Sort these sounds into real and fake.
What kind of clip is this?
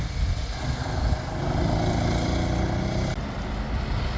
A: real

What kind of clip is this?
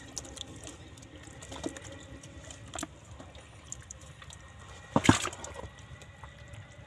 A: real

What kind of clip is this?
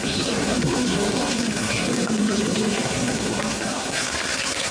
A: fake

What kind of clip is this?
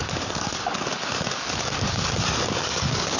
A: fake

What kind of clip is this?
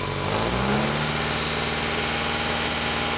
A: real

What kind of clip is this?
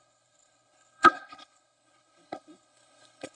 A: fake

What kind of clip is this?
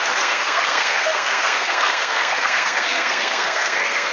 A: fake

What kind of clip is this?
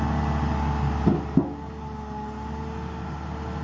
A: real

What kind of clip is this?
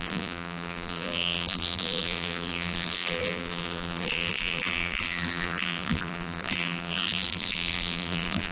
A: fake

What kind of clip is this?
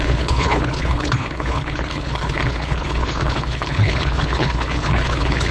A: fake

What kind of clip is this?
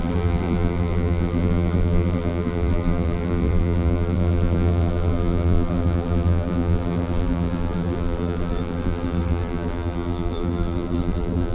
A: fake